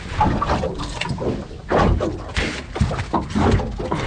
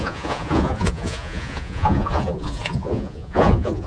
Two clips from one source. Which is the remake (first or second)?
second